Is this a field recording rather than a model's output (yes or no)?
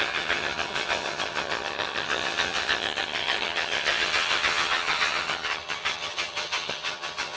no